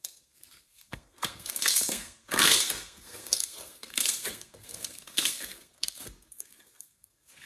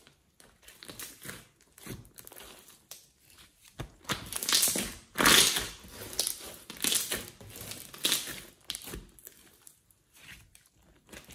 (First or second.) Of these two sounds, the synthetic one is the first